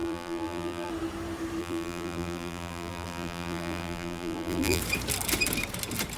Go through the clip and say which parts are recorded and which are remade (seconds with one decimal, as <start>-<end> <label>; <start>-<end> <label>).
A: 0.0-0.9 remade; 0.9-1.6 recorded; 1.6-4.8 remade; 4.8-6.2 recorded